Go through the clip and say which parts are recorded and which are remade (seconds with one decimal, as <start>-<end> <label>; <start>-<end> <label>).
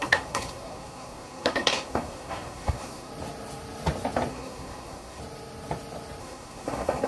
0.0-3.1 remade; 3.1-4.3 recorded; 4.3-5.2 remade; 5.2-6.2 recorded; 6.2-7.1 remade